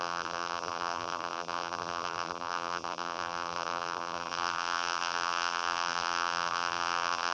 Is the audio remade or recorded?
remade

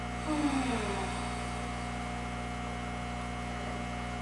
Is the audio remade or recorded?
recorded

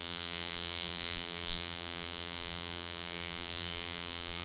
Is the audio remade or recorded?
remade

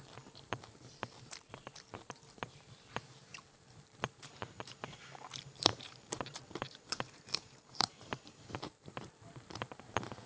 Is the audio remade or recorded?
remade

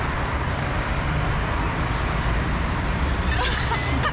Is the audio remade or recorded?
recorded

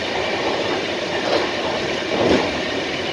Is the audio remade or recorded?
remade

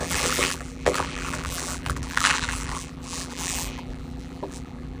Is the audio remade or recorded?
remade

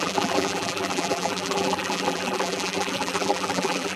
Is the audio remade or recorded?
remade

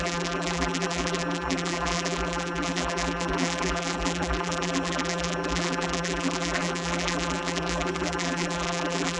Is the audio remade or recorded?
remade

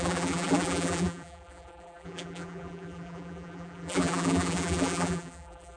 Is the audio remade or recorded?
remade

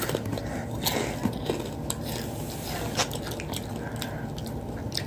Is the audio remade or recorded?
recorded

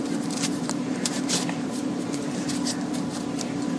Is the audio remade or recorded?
remade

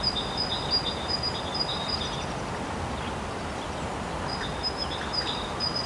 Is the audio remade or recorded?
recorded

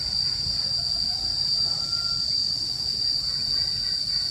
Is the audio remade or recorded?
recorded